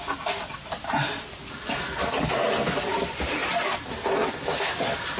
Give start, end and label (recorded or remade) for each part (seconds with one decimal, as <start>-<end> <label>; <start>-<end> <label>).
0.0-5.2 recorded